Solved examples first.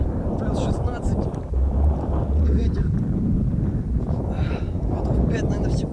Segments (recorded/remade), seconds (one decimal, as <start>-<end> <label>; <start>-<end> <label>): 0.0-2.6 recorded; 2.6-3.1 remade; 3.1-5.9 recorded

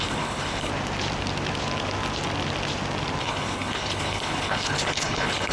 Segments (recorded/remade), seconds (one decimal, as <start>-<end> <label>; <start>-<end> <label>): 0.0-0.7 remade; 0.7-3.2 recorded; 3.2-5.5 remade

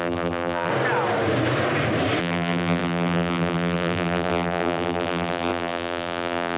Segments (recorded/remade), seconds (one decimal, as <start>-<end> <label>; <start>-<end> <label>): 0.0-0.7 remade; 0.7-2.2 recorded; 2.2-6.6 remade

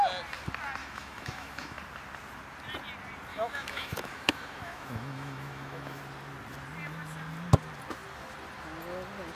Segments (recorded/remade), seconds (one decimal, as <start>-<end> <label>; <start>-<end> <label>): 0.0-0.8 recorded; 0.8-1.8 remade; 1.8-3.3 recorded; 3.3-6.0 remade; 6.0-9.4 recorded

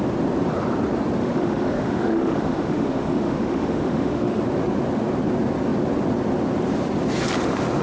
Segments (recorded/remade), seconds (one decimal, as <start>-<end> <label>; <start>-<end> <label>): 0.0-1.2 recorded; 1.2-4.4 remade; 4.4-7.8 recorded

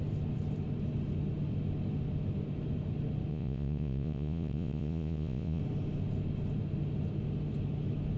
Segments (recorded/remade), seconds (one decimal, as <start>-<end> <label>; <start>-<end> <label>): 0.0-3.3 recorded; 3.3-5.6 remade; 5.6-8.2 recorded